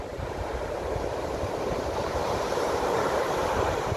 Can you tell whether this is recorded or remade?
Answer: remade